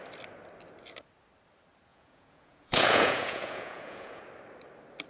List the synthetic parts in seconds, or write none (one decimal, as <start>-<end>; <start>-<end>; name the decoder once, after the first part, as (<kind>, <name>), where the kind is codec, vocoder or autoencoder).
1.9-4.2 (vocoder, Vocos)